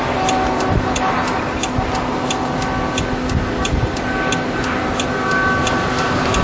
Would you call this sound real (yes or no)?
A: yes